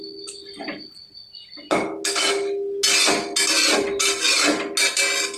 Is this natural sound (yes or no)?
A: yes